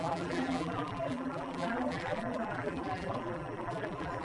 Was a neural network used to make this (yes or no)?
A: yes